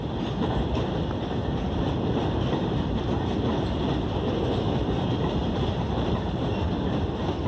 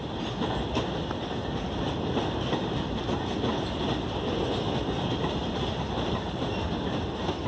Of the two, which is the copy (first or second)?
first